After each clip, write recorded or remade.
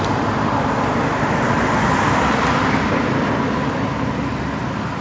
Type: recorded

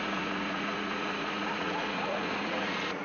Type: remade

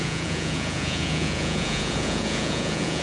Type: remade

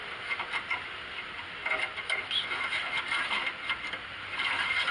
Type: recorded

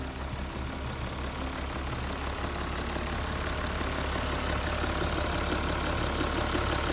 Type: recorded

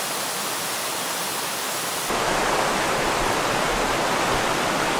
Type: recorded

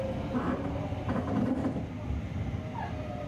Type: recorded